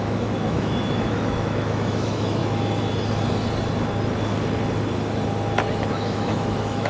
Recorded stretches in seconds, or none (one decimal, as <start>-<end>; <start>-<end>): 2.4-5.9